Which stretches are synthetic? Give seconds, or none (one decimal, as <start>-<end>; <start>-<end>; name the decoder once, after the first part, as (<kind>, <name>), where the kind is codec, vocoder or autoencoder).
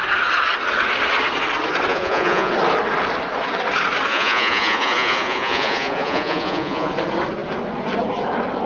1.9-2.5 (vocoder, Vocos); 4.1-6.9